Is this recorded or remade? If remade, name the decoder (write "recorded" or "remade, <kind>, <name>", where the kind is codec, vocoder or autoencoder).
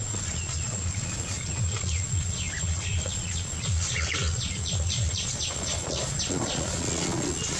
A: remade, vocoder, Vocos